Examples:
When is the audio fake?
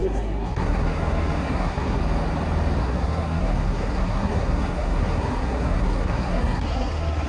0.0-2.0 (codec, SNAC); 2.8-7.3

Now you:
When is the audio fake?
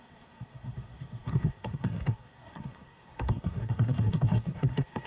0.0-5.1 (codec, SNAC)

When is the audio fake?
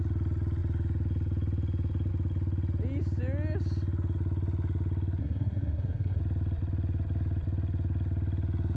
5.2-6.2 (codec, SNAC)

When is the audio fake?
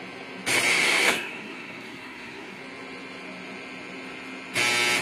0.7-2.6 (codec, SNAC)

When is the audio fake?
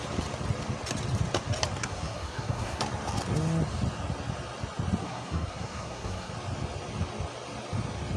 1.8-2.8 (codec, SNAC); 5.0-6.3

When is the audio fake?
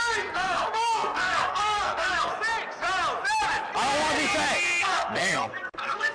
0.0-2.3 (codec, SNAC); 4.8-6.1